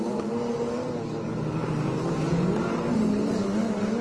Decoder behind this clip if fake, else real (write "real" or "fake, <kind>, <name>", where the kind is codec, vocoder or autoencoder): real